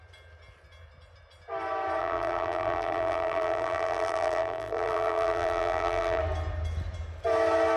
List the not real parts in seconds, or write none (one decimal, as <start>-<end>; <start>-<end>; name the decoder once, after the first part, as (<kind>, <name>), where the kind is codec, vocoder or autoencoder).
2.0-6.2 (vocoder, BigVGAN v2)